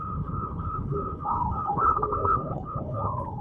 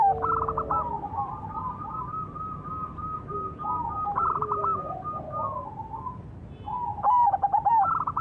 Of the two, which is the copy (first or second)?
first